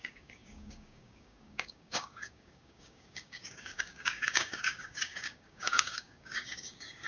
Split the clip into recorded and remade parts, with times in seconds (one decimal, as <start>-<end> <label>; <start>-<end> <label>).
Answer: 0.0-7.1 remade